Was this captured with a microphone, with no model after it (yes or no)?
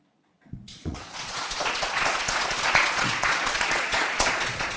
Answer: no